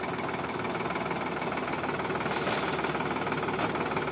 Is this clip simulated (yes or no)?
no